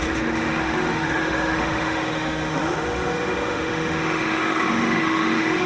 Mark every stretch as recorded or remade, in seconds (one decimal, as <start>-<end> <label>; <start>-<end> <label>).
0.0-5.7 remade